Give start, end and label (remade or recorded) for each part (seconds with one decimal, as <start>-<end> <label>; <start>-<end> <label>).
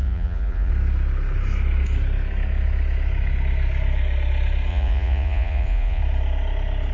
0.0-0.7 remade; 0.7-4.7 recorded; 4.7-6.0 remade; 6.0-6.9 recorded